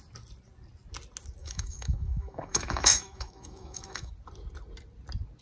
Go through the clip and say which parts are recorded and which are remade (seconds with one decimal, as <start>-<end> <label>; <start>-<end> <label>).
0.0-1.4 recorded; 1.4-4.1 remade; 4.1-5.4 recorded